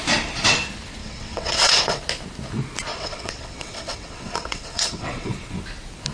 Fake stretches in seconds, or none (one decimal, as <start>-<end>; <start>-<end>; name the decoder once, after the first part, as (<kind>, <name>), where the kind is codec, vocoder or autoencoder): 1.0-2.0 (vocoder, WaveNeXt); 2.9-5.3